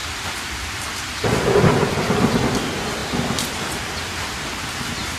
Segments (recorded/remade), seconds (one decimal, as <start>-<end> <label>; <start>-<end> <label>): 0.0-1.1 remade; 1.1-5.2 recorded